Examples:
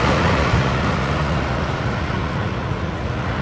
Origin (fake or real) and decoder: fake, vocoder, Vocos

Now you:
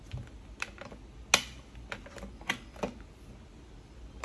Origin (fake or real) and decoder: real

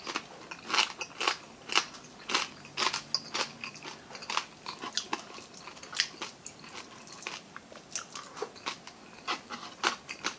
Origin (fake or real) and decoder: real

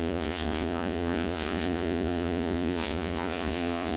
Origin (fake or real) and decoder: fake, vocoder, Vocos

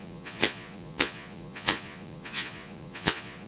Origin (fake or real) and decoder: fake, vocoder, Vocos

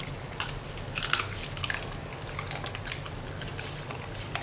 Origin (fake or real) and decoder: real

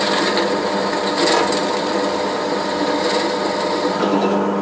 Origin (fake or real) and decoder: real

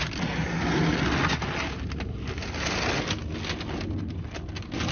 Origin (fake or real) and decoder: real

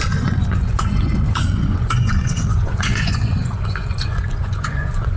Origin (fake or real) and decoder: fake, vocoder, Vocos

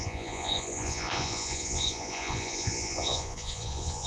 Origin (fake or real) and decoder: fake, vocoder, Vocos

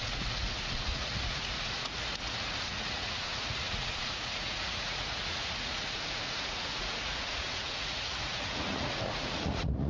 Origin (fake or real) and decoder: fake, vocoder, Vocos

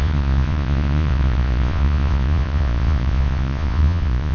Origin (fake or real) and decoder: fake, vocoder, Vocos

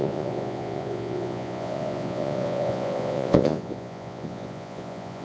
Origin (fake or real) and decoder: fake, vocoder, Vocos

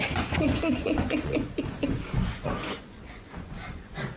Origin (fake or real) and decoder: fake, vocoder, Vocos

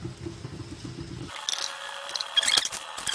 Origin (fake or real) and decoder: real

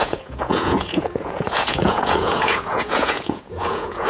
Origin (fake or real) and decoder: fake, vocoder, Vocos